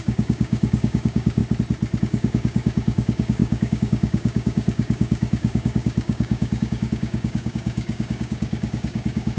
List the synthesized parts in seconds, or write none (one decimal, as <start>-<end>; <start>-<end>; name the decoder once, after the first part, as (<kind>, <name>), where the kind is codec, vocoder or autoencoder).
0.0-1.4 (codec, DAC); 2.0-9.4